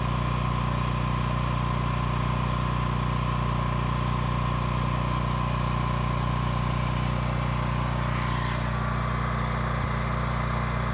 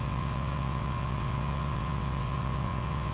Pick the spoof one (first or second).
second